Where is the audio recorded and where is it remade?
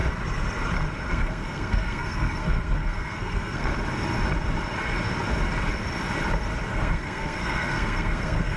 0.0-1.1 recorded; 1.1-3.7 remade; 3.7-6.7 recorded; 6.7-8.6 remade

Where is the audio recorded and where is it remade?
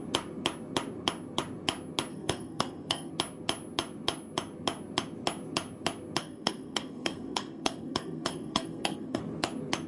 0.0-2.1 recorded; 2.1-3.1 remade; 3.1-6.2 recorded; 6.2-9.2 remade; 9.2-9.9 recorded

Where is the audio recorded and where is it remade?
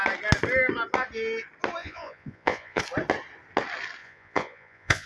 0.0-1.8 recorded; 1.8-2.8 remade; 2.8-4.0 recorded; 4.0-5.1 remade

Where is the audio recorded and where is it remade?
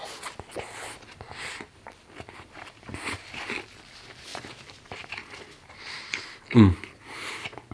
0.0-4.3 recorded; 4.3-5.0 remade; 5.0-7.7 recorded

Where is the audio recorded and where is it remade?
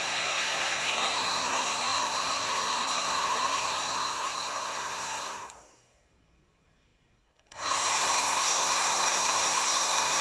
0.0-10.2 remade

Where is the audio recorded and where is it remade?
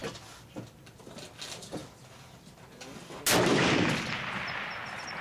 0.0-5.2 recorded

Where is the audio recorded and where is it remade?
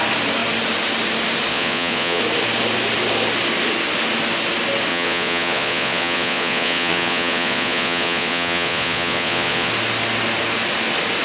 0.0-1.5 recorded; 1.5-2.2 remade; 2.2-4.9 recorded; 4.9-9.7 remade; 9.7-11.2 recorded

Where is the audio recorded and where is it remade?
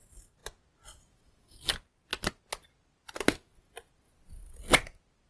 0.0-5.3 recorded